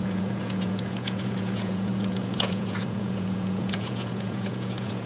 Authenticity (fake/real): fake